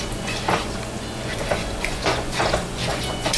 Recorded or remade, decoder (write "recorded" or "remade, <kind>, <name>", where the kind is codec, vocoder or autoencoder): remade, vocoder, Vocos